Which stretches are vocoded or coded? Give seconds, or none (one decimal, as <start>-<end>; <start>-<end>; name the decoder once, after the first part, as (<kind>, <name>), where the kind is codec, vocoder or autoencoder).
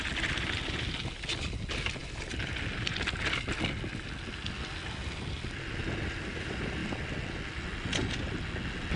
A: none